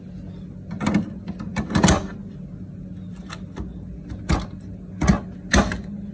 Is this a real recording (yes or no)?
yes